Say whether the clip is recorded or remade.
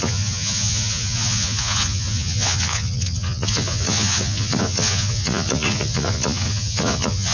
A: remade